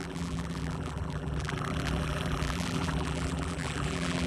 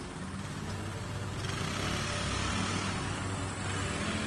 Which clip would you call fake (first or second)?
first